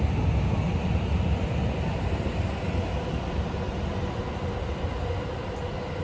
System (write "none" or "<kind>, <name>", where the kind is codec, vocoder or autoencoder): none